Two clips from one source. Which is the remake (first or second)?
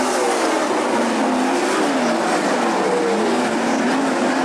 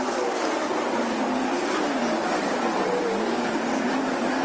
second